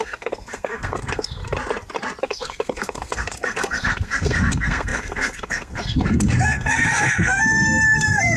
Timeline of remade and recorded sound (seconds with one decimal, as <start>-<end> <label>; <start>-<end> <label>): 0.0-1.4 remade; 1.4-2.2 recorded; 2.2-8.4 remade